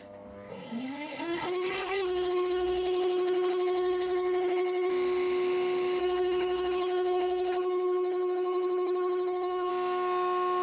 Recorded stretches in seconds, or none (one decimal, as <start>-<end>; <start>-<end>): 0.0-0.5; 4.9-6.0; 9.7-10.6